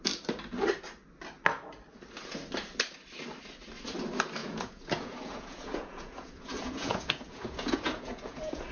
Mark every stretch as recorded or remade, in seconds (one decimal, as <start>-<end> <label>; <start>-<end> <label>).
0.0-4.4 recorded; 4.4-8.7 remade